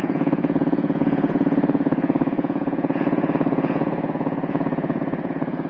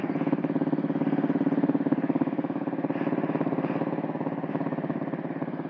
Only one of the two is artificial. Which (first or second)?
first